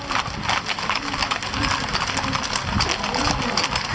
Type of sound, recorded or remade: recorded